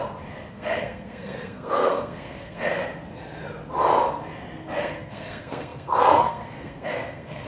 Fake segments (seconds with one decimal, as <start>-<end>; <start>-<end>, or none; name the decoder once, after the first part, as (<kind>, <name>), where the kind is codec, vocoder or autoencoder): 0.5-2.8 (codec, SNAC); 4.8-7.5